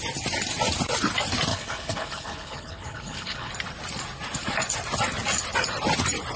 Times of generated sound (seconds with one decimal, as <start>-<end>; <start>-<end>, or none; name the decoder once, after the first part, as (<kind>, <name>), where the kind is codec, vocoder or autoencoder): 1.5-3.5 (codec, HILCodec)